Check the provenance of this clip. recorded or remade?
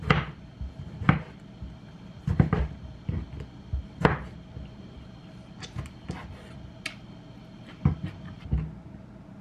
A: recorded